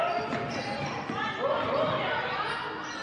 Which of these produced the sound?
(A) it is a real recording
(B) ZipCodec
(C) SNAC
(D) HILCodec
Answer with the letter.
A